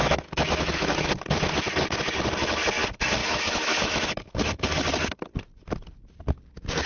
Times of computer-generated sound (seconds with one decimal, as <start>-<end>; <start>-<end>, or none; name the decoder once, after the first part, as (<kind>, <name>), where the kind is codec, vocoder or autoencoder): 0.0-1.1 (autoencoder, DAC-VAE); 3.2-4.5